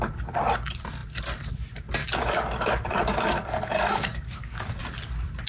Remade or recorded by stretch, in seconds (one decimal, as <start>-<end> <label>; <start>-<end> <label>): 0.0-2.0 recorded; 2.0-4.8 remade; 4.8-5.5 recorded